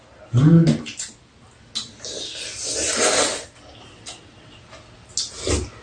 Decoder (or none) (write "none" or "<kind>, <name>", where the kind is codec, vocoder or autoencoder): none